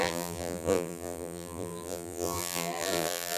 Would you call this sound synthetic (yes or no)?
yes